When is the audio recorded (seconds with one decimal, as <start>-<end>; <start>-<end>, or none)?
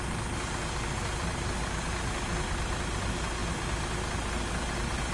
0.0-5.1